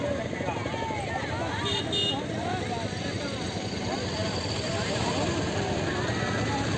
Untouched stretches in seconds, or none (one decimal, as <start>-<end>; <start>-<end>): 0.0-6.8